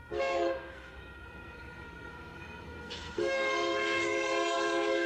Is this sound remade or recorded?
remade